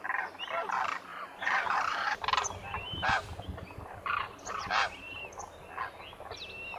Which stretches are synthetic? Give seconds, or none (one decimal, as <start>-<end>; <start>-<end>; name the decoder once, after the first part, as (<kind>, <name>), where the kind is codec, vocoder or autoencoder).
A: 1.1-5.2 (vocoder, BigVGAN v2)